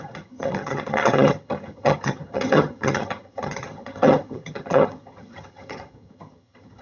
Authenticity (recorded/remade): remade